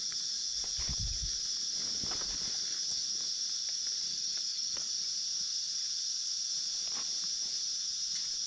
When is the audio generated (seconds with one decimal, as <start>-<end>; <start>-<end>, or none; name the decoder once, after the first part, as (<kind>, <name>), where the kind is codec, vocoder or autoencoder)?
4.1-4.9 (codec, DAC)